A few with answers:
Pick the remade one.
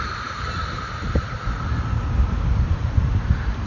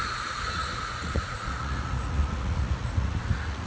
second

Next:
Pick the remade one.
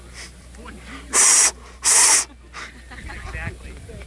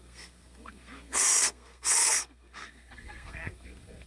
second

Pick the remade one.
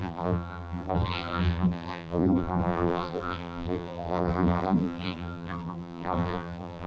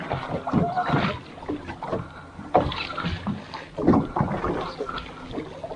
first